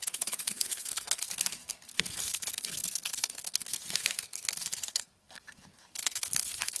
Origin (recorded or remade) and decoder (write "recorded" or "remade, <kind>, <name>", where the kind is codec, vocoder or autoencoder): remade, codec, SNAC